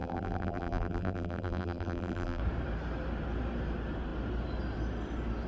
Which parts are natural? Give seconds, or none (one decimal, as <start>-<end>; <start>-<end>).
2.4-5.5